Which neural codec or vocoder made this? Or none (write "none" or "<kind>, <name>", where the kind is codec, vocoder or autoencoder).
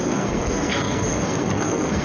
codec, SNAC